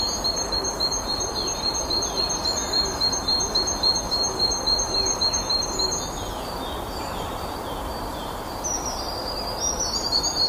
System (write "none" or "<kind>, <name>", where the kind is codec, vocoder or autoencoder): none